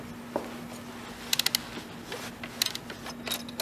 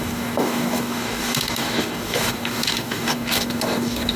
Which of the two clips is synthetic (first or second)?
second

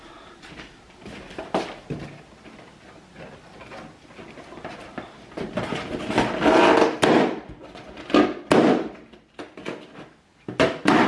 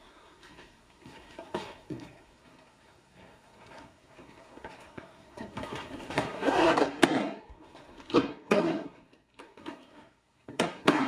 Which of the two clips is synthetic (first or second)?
second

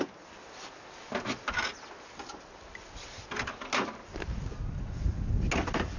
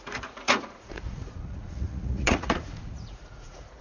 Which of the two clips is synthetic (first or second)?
second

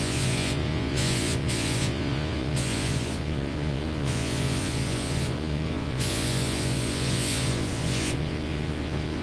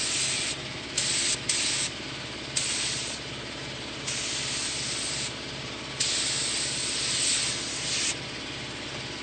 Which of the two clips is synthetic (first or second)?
first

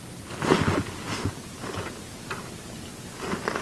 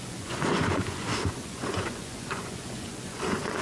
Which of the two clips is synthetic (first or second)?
second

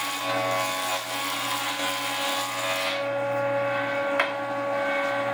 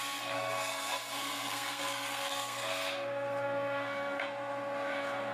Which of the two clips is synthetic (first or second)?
second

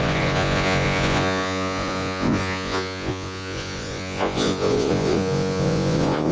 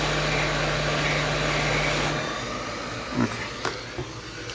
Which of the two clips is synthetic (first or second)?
first